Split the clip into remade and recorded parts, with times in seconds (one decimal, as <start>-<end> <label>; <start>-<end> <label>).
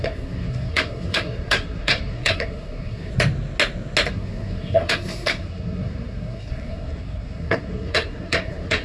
0.0-3.1 remade; 3.1-4.1 recorded; 4.1-8.8 remade